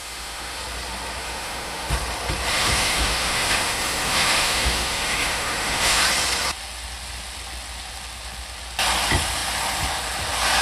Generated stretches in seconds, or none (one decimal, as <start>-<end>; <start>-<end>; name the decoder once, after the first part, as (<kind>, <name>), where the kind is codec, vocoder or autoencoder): 0.0-0.6 (autoencoder, DAC-VAE); 1.2-1.9; 2.5-6.0

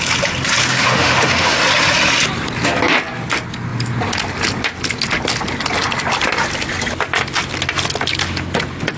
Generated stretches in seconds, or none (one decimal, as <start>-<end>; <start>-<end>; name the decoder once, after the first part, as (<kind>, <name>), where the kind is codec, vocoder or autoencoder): 0.6-1.6 (autoencoder, DAC-VAE)

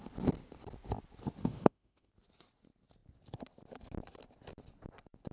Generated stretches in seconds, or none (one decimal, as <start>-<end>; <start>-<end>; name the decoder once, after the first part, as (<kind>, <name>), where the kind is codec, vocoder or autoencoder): 1.4-2.1 (autoencoder, DAC-VAE)

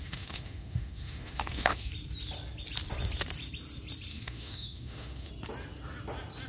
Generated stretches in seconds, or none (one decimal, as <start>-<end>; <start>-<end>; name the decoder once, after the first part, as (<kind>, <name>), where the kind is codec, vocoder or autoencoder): 0.0-1.9 (autoencoder, DAC-VAE); 4.1-5.3

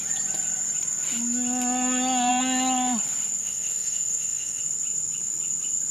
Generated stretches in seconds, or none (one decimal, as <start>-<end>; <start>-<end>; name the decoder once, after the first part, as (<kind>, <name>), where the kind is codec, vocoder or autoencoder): 3.4-4.6 (autoencoder, DAC-VAE)